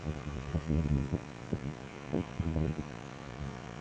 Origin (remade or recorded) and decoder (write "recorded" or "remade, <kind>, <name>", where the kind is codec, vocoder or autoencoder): remade, vocoder, Vocos